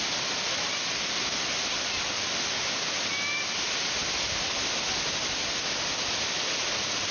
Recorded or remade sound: recorded